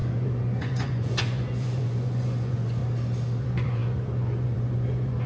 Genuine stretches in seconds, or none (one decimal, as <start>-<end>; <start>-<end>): 2.8-3.4